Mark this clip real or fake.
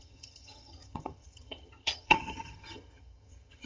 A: fake